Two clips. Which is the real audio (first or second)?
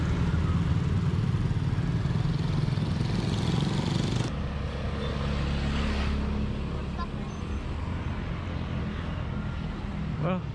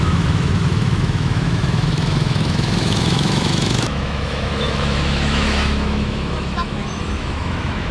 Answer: first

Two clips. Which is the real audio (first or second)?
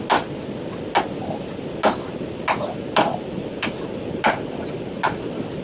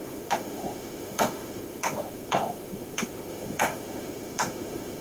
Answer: first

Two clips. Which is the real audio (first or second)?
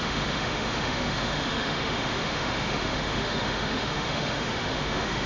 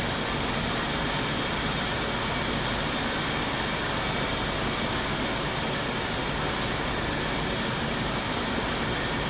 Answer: second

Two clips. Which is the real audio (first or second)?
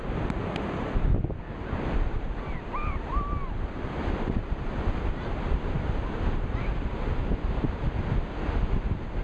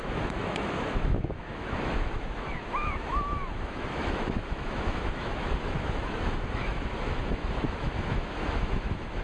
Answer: first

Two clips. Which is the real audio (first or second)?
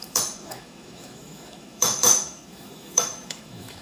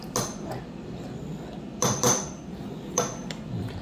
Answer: second